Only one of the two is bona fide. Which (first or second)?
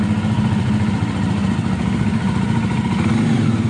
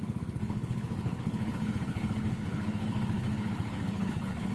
first